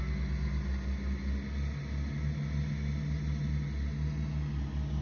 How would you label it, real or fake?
real